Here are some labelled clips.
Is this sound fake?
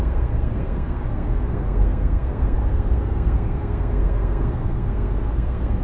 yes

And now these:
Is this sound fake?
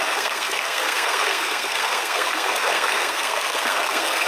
yes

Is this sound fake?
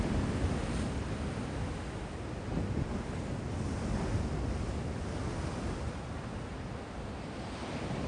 no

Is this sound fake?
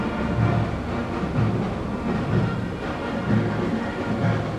no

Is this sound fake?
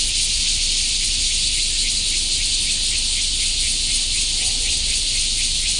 no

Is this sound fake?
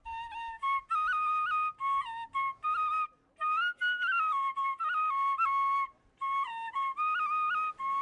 no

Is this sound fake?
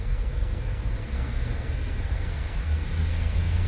yes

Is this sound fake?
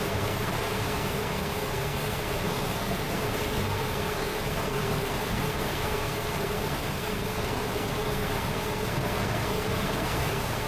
yes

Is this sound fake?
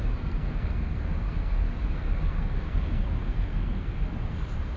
yes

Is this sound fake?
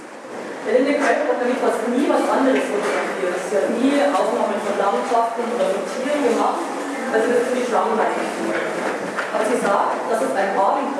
no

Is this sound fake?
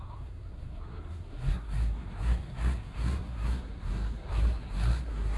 yes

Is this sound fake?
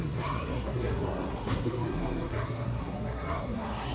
yes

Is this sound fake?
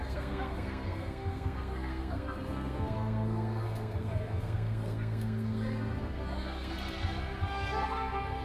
yes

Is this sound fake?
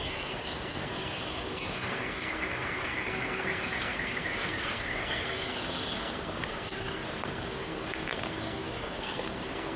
yes